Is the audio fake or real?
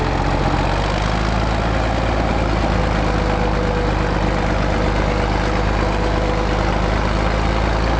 real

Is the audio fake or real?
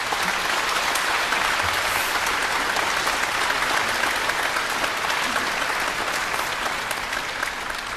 real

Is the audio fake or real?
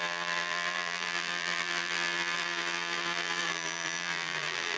fake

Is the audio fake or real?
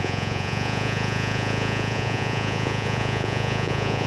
fake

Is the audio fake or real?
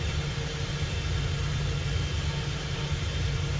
fake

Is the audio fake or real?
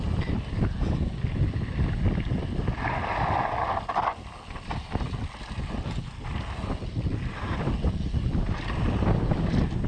real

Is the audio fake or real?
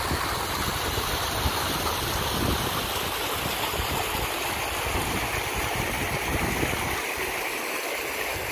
real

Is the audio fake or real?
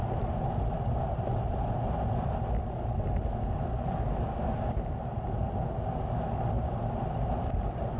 real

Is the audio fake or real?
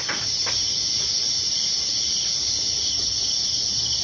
real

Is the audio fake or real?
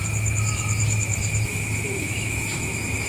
fake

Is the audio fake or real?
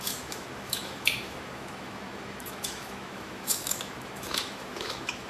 fake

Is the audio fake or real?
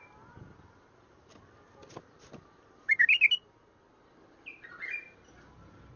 real